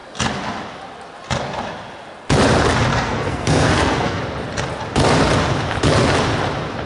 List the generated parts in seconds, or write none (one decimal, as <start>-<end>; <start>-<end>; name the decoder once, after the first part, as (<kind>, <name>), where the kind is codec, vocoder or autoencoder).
2.9-4.2 (codec, SNAC)